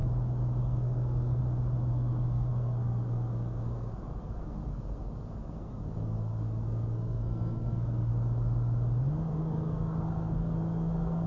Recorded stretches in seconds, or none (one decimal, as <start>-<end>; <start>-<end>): 0.0-0.6; 1.4-1.9; 8.1-9.4